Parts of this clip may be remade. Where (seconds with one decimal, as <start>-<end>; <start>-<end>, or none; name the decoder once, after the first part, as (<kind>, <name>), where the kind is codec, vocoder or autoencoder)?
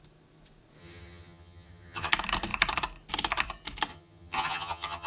0.8-2.1 (vocoder, HiFi-GAN); 3.9-5.1